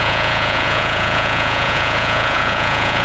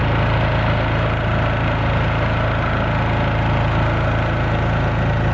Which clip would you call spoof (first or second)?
first